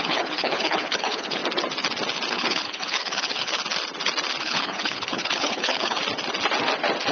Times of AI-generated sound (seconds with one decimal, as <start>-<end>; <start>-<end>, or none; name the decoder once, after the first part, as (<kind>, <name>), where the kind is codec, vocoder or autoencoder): 0.0-1.4 (codec, HILCodec); 2.3-3.6; 4.4-6.0